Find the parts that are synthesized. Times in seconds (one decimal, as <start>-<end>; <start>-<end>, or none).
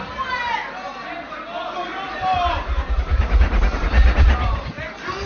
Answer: 3.1-4.6